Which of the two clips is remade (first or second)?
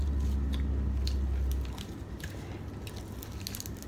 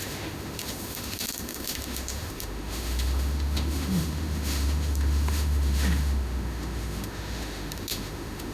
second